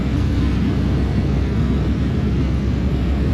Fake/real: fake